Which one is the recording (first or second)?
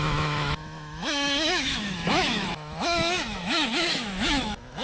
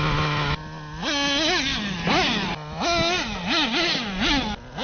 second